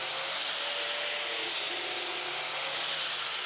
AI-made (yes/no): no